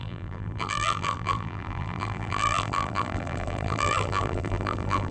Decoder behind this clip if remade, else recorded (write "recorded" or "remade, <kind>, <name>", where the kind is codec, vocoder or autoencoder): remade, vocoder, BigVGAN v2